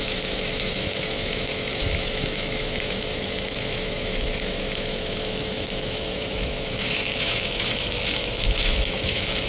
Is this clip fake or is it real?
fake